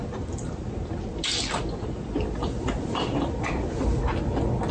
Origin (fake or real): real